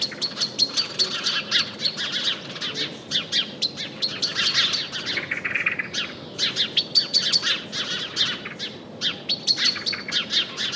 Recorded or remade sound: recorded